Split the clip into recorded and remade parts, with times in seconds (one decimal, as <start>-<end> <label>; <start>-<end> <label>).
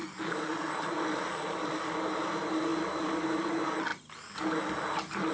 0.0-1.7 remade; 1.7-2.7 recorded; 2.7-3.2 remade; 3.2-5.3 recorded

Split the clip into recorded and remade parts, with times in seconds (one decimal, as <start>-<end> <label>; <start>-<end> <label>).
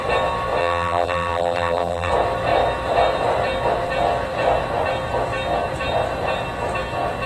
0.0-0.6 recorded; 0.6-2.1 remade; 2.1-7.3 recorded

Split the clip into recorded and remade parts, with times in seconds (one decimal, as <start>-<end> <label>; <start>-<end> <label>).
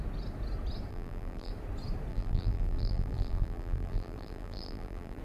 0.0-0.9 recorded; 0.9-1.5 remade; 1.5-2.1 recorded; 2.1-5.2 remade